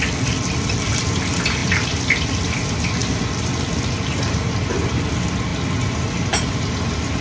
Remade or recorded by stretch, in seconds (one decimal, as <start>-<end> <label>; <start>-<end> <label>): 0.0-7.2 recorded